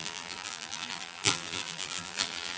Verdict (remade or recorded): remade